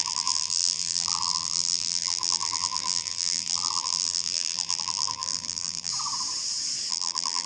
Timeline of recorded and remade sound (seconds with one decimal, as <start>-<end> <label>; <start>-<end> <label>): 0.0-5.9 remade; 5.9-6.9 recorded; 6.9-7.5 remade